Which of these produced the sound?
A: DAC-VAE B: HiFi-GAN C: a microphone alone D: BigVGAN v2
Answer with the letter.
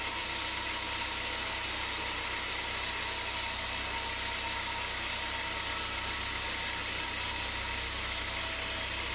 C